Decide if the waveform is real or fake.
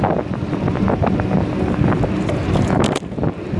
real